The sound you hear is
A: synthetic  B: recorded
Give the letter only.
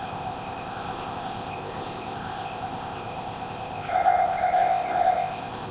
A